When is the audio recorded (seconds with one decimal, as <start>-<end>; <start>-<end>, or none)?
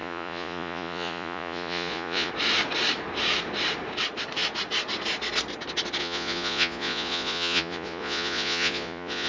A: 2.3-6.0